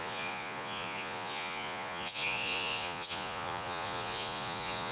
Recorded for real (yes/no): no